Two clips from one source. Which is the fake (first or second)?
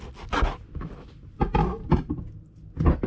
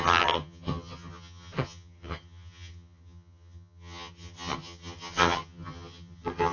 second